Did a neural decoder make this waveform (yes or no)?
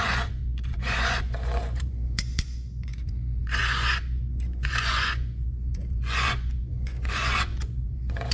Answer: yes